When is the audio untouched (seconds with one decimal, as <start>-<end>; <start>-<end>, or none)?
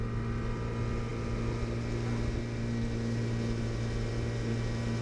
0.0-5.0